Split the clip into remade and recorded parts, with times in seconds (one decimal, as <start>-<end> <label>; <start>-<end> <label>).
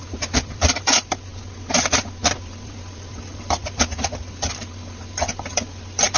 0.0-1.3 remade; 1.3-2.4 recorded; 2.4-6.2 remade